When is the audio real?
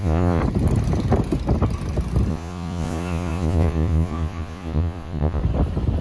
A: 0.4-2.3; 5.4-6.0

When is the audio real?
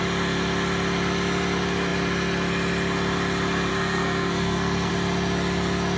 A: 0.0-3.7; 4.9-6.0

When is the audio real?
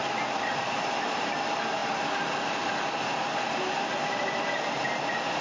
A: 0.0-5.4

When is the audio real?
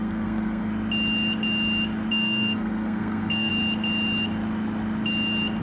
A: 0.7-2.1; 3.5-5.6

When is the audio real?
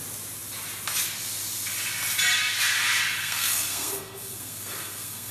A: 0.0-3.2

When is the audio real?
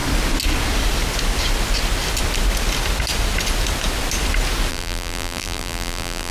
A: 0.0-4.7